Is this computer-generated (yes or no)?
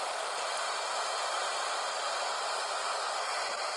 yes